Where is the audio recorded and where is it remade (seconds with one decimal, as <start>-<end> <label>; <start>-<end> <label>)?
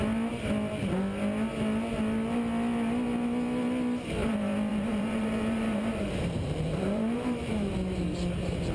0.0-4.7 recorded; 4.7-7.7 remade; 7.7-8.7 recorded